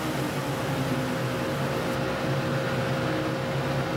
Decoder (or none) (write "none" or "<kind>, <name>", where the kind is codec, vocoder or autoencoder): none